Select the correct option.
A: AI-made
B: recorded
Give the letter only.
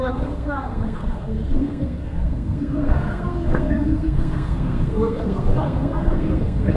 A